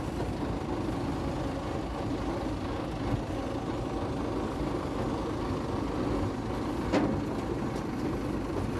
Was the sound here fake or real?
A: real